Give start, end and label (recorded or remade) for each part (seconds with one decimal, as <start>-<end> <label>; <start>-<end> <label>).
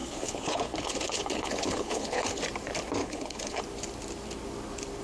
0.0-2.4 remade; 2.4-3.0 recorded; 3.0-3.6 remade; 3.6-5.0 recorded